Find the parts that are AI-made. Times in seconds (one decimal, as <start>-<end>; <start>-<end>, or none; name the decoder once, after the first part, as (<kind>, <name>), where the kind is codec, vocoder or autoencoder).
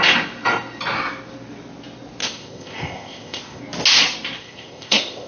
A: 2.2-3.6 (codec, ZipCodec); 4.4-5.3